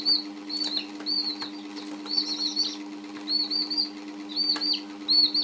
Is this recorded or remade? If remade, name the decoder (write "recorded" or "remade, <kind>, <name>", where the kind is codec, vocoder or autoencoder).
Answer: recorded